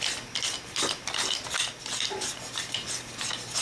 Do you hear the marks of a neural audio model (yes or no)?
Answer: no